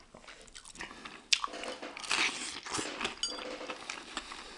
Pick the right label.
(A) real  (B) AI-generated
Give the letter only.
A